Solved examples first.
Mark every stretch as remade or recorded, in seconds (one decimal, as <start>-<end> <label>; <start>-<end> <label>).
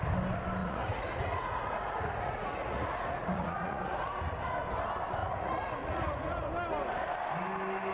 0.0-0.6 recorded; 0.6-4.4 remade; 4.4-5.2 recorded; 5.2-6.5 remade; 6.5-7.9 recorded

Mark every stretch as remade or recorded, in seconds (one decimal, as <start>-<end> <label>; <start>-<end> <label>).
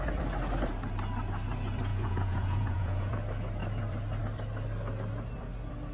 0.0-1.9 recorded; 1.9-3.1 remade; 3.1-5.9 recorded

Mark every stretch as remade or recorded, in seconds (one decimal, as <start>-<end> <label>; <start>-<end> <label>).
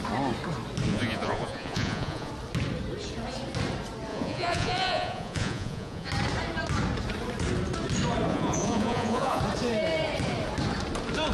0.0-0.9 recorded; 0.9-2.3 remade; 2.3-4.1 recorded; 4.1-6.1 remade; 6.1-8.3 recorded; 8.3-9.4 remade; 9.4-11.3 recorded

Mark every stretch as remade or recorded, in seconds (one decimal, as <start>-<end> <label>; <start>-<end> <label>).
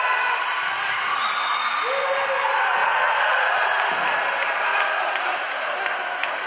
0.0-2.8 recorded; 2.8-4.2 remade; 4.2-4.7 recorded; 4.7-5.8 remade; 5.8-6.5 recorded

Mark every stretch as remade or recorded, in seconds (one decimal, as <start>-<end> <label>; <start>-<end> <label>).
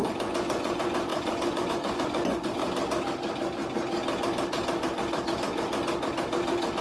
0.0-2.6 remade; 2.6-6.8 recorded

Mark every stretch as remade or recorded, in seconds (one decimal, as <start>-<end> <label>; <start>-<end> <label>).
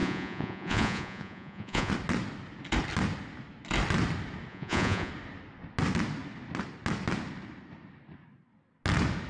0.0-1.9 remade; 1.9-4.5 recorded; 4.5-5.1 remade; 5.1-9.3 recorded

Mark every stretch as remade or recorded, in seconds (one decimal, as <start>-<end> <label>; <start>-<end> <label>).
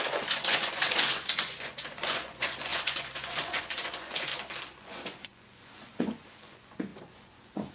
0.0-4.3 remade; 4.3-4.8 recorded; 4.8-7.7 remade